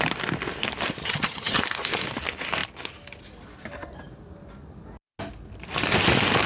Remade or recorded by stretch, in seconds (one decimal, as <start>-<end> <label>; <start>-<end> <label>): 0.0-1.0 recorded; 1.0-1.6 remade; 1.6-6.5 recorded